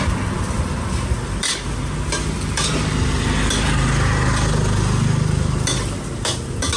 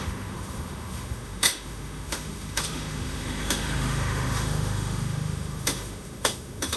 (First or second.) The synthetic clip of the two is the second